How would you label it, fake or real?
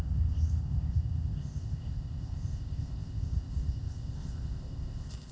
fake